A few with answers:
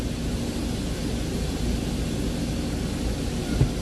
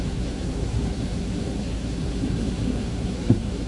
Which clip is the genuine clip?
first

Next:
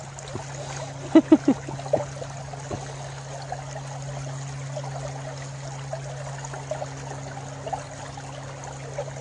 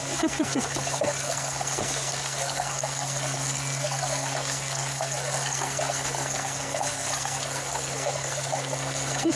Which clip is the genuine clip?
first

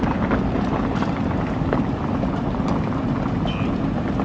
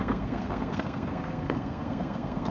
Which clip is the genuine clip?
first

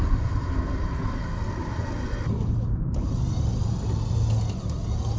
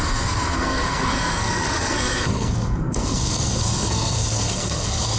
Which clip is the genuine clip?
first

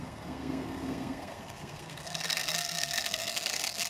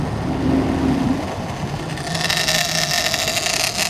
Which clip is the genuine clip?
second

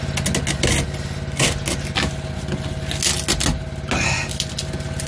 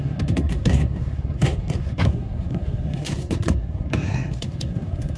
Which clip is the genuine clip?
first